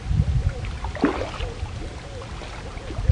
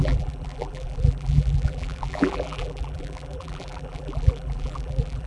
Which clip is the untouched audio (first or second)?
first